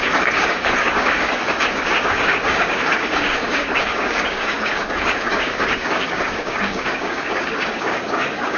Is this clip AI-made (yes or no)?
yes